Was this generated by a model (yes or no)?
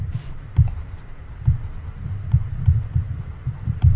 yes